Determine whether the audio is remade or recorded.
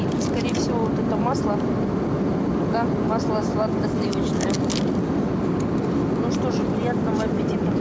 recorded